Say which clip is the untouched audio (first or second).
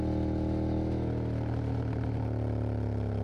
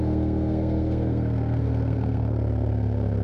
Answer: first